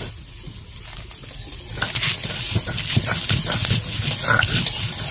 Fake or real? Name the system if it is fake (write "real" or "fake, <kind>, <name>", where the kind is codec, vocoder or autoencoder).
real